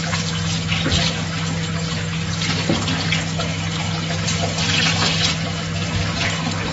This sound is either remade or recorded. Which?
recorded